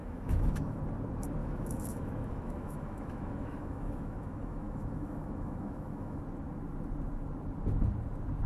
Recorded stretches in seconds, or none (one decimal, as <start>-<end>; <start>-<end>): 0.8-1.4; 6.2-8.5